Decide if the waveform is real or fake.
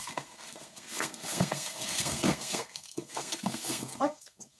fake